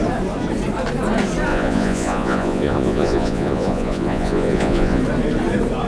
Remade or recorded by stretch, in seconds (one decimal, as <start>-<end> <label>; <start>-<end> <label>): 0.0-1.5 recorded; 1.5-5.0 remade; 5.0-5.9 recorded